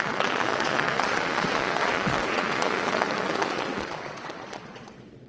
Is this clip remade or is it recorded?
remade